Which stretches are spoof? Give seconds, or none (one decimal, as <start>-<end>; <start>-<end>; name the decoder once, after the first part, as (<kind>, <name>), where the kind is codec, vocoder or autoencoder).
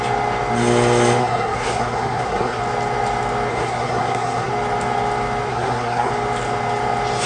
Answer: 1.2-2.6 (codec, SNAC); 3.5-4.5; 5.5-6.1